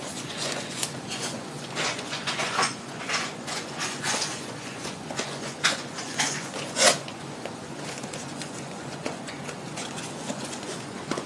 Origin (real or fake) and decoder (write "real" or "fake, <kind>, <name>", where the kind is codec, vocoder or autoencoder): fake, vocoder, Vocos